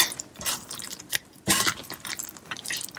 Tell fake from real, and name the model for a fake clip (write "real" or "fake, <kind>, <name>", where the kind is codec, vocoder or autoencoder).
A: fake, vocoder, BigVGAN v2